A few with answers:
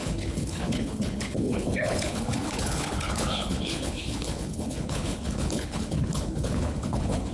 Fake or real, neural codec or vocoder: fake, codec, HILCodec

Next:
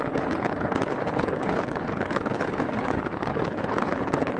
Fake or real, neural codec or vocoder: fake, codec, HILCodec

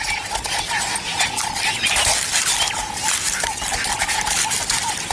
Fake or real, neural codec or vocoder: real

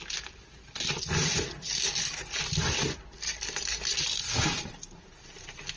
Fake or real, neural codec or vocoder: real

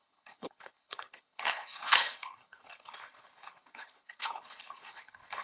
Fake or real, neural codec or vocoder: fake, codec, HILCodec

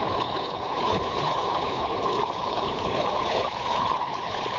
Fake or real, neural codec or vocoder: fake, codec, HILCodec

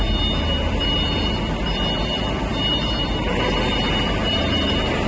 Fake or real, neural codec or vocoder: real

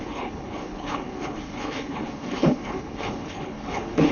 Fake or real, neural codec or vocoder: fake, codec, HILCodec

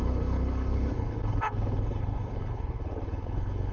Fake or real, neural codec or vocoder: fake, codec, HILCodec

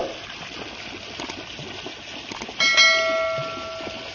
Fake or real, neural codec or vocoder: real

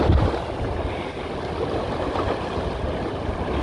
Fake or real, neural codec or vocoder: real